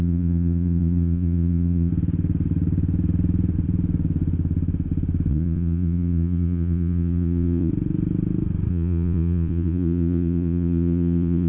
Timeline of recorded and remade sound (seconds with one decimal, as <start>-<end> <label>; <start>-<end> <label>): 0.0-1.9 remade; 1.9-5.3 recorded; 5.3-7.7 remade; 7.7-8.7 recorded; 8.7-11.5 remade